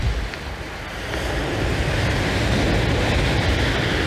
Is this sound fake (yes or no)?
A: no